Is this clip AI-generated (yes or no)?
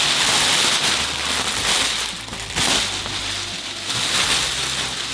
no